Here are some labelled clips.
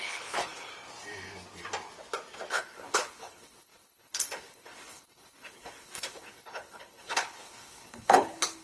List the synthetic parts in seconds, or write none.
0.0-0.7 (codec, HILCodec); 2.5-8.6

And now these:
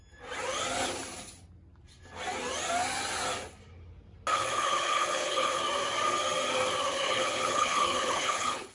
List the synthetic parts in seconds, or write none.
4.3-5.6 (codec, HILCodec); 6.9-8.7